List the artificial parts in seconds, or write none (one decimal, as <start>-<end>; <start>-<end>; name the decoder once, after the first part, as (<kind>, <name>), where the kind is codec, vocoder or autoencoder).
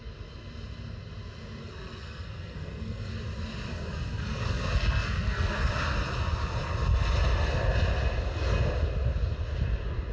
1.6-3.1 (codec, SNAC); 3.7-5.7